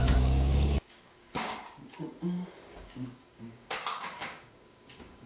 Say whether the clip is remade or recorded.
remade